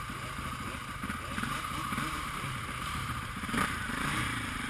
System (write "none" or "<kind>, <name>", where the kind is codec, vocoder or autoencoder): vocoder, BigVGAN v2